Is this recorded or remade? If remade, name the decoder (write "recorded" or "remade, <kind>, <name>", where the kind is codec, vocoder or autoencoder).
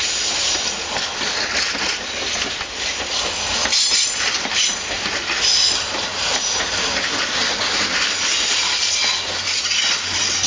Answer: recorded